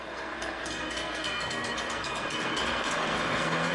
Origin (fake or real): fake